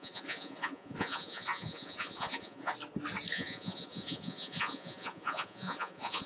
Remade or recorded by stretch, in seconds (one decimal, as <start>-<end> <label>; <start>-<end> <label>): 0.0-2.7 remade; 2.7-3.3 recorded; 3.3-6.3 remade